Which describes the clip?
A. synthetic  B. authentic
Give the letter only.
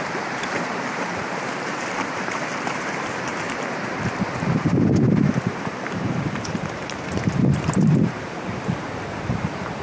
A